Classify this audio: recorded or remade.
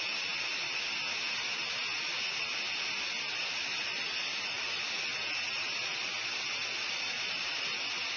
recorded